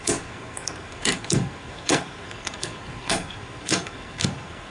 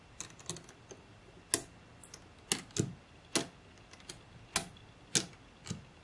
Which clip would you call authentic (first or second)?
second